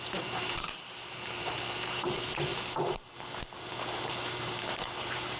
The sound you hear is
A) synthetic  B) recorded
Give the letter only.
A